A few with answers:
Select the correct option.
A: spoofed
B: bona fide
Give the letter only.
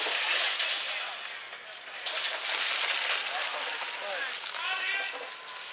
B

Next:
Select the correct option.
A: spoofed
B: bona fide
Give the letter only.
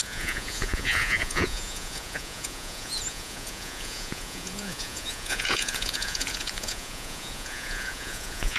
A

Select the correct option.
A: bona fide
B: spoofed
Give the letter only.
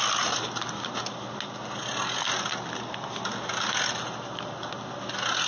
A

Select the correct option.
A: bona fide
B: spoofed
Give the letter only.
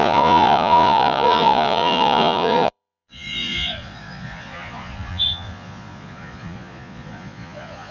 B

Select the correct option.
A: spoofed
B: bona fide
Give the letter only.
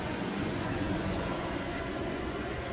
A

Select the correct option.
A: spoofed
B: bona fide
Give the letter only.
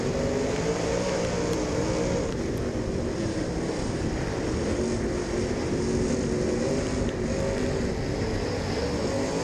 B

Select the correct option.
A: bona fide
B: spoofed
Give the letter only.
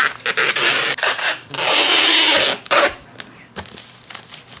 A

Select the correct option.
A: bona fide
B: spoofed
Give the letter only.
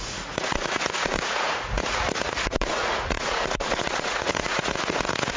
B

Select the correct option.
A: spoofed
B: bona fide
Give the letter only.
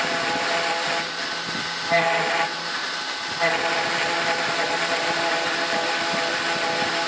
B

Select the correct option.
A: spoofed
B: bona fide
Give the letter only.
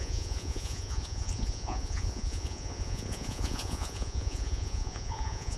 A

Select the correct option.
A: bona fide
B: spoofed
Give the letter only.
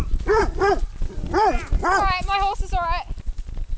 A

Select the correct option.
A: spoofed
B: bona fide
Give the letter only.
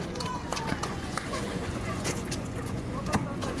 A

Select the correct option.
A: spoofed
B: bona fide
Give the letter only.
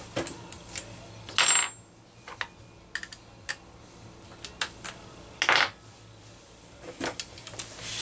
B